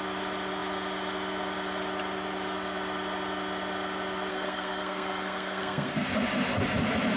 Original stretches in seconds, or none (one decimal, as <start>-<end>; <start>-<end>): 0.0-4.3; 5.9-7.2